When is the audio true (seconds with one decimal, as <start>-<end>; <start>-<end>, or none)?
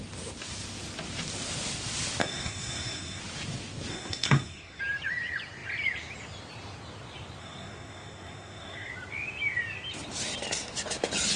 0.0-2.2; 3.2-3.9; 4.8-7.4; 8.9-11.4